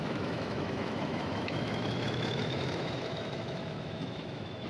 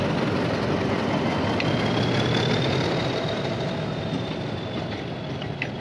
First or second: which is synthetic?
first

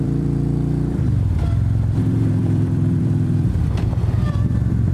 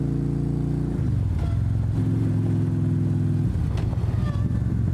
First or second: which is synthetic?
first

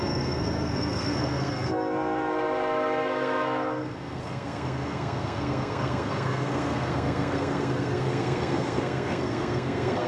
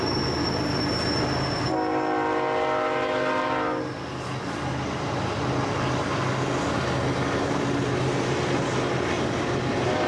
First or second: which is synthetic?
first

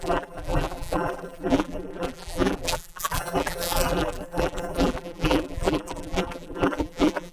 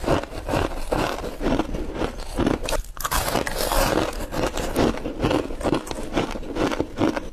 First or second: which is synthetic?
first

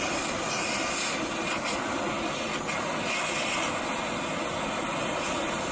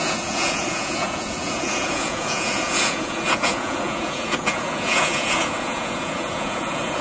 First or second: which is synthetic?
second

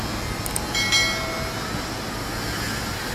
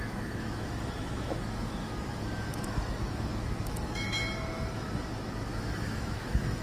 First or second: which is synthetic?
second